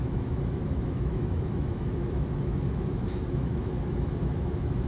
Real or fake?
fake